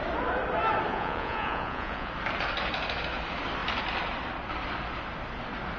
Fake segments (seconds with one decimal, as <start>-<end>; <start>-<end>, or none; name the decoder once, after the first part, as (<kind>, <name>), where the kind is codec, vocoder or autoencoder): 0.9-2.1 (vocoder, Vocos)